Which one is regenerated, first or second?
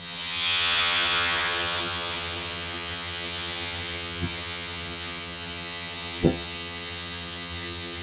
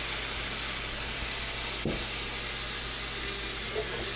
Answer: first